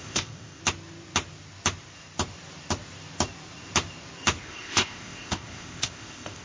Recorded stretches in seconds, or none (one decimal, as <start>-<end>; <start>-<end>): 0.6-4.4